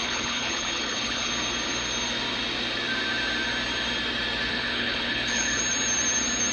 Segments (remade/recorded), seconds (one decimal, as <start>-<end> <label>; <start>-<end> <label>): 0.0-1.3 remade; 1.3-4.5 recorded; 4.5-5.6 remade; 5.6-6.5 recorded